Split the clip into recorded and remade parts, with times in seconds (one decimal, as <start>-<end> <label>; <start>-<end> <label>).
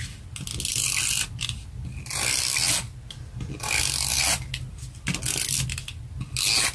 0.0-6.7 recorded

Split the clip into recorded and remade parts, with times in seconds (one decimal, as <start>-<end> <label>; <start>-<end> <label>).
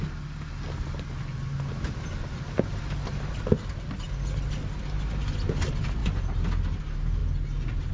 0.0-7.9 recorded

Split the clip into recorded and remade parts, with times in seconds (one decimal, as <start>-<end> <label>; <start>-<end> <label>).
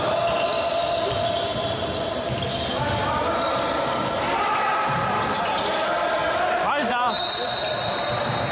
0.0-8.5 recorded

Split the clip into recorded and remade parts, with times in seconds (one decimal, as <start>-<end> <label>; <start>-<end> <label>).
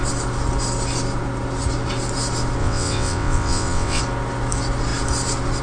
0.0-2.6 recorded; 2.6-4.0 remade; 4.0-5.6 recorded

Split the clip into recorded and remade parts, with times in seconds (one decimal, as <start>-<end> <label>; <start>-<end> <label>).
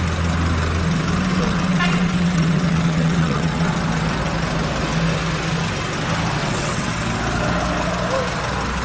0.0-1.3 recorded; 1.3-3.8 remade; 3.8-6.4 recorded; 6.4-6.9 remade; 6.9-8.8 recorded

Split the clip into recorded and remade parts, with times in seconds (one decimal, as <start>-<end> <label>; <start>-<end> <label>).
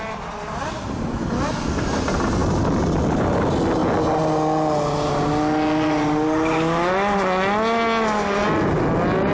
0.0-9.3 recorded